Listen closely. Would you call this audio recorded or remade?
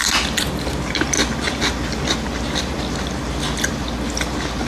recorded